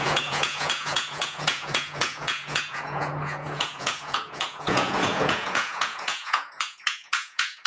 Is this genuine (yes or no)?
no